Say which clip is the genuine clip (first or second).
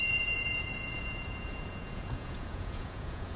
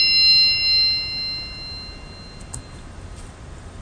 second